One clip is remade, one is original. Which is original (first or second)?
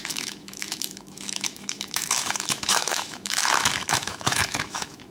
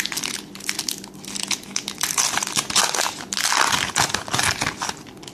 second